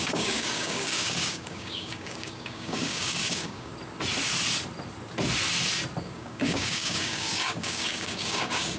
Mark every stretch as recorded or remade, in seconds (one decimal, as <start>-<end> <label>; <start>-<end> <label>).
0.0-3.7 remade; 3.7-6.0 recorded; 6.0-8.8 remade